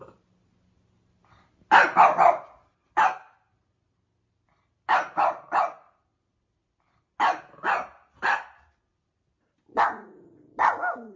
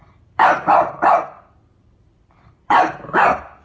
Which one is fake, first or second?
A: second